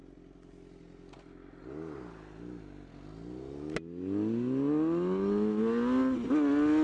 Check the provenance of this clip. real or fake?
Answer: real